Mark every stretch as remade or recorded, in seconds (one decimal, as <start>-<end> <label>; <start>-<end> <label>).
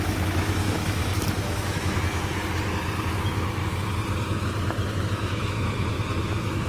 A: 0.0-1.0 remade; 1.0-1.5 recorded; 1.5-2.4 remade; 2.4-3.2 recorded; 3.2-3.6 remade; 3.6-5.1 recorded; 5.1-6.7 remade